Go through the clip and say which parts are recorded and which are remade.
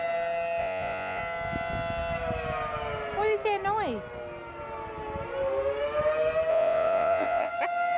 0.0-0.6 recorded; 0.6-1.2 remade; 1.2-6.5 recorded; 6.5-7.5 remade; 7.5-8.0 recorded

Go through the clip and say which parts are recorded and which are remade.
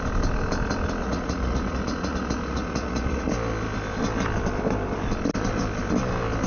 0.0-1.0 recorded; 1.0-3.3 remade; 3.3-6.5 recorded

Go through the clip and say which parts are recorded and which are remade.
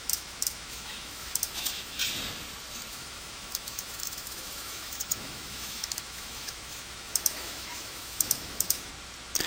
0.0-2.0 remade; 2.0-2.9 recorded; 2.9-8.9 remade; 8.9-9.5 recorded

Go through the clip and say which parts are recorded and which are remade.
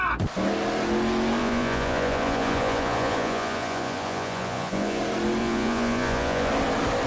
0.0-1.4 recorded; 1.4-5.0 remade; 5.0-5.4 recorded; 5.4-6.5 remade; 6.5-7.1 recorded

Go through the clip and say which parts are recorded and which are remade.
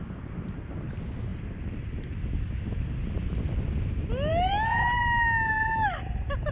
0.0-6.5 recorded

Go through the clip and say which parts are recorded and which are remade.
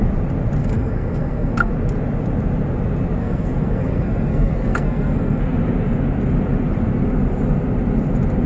0.0-0.6 recorded; 0.6-1.7 remade; 1.7-3.2 recorded; 3.2-5.4 remade; 5.4-8.5 recorded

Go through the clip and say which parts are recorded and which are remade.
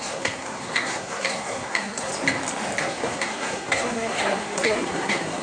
0.0-2.1 remade; 2.1-2.8 recorded; 2.8-5.4 remade